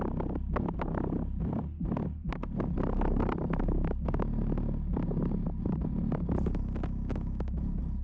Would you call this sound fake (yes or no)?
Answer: no